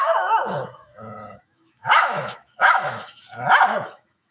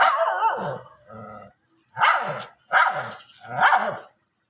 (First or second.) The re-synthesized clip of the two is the first